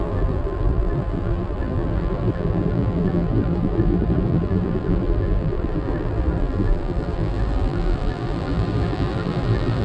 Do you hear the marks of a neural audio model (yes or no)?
yes